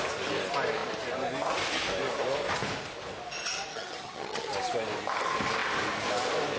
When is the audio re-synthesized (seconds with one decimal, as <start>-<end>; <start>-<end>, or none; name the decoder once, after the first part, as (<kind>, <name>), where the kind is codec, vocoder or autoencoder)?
3.7-4.5 (vocoder, HiFi-GAN)

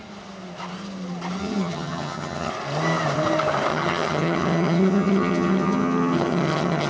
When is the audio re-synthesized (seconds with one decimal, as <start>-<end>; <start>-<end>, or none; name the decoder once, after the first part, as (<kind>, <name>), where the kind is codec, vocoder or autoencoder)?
1.4-2.5 (vocoder, HiFi-GAN); 3.7-6.9

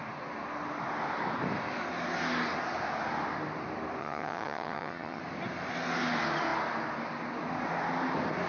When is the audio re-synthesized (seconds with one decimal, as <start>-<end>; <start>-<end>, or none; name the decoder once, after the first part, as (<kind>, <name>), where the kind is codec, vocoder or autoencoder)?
4.0-5.2 (vocoder, HiFi-GAN)

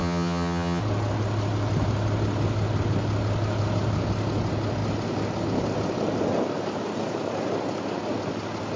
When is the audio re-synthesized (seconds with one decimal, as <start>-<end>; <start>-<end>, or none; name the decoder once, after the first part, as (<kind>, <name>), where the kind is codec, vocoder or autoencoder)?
0.0-0.8 (vocoder, HiFi-GAN)

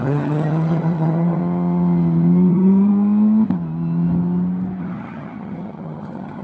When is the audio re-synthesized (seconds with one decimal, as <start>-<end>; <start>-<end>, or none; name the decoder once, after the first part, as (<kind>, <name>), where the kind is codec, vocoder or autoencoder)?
0.0-1.4 (vocoder, HiFi-GAN); 2.5-2.9; 4.8-6.4

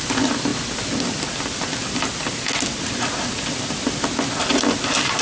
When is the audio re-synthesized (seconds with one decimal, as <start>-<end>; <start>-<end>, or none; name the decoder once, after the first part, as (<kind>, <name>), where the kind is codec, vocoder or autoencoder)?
none

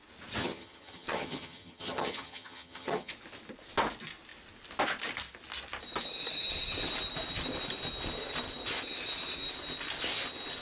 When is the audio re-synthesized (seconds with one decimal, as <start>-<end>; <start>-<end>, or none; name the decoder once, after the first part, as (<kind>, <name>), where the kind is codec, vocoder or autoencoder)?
0.4-3.1 (vocoder, HiFi-GAN)